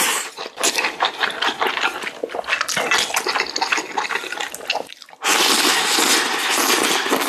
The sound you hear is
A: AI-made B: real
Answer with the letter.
B